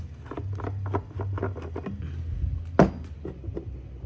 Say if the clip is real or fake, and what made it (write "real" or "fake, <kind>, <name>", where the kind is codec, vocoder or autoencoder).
real